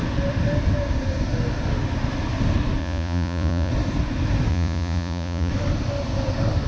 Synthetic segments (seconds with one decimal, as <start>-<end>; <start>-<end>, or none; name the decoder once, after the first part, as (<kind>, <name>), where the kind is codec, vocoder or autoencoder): 2.8-3.7 (vocoder, Vocos); 4.5-5.5